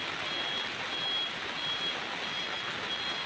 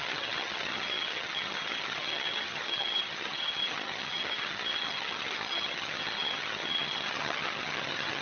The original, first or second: first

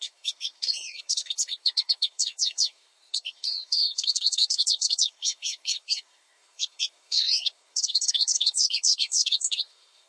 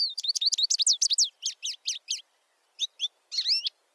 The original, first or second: second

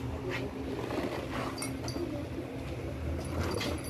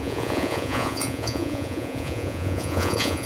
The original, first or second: first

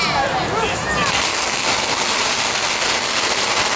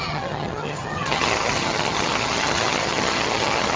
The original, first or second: first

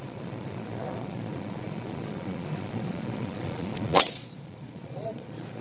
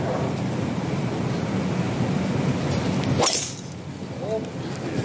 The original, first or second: second